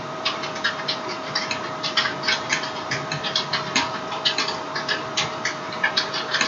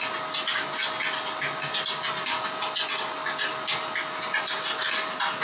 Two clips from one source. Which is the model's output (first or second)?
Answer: first